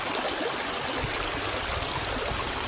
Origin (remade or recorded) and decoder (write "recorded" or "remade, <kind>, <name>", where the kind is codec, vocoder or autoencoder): recorded